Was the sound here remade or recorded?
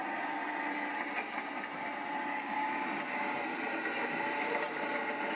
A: recorded